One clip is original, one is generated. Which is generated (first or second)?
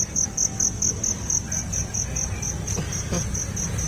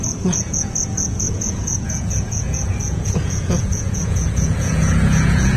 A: second